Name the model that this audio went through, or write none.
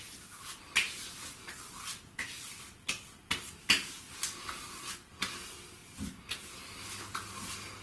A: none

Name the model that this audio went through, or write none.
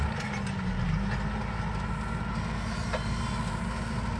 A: none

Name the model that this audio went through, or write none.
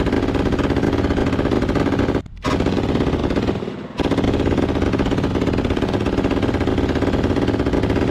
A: none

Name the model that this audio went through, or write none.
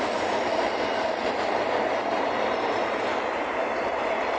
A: vocoder, BigVGAN v2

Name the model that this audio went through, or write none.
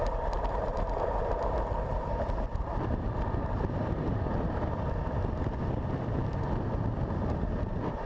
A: vocoder, BigVGAN v2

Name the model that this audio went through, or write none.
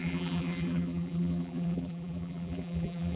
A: vocoder, BigVGAN v2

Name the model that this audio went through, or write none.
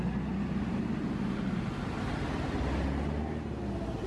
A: none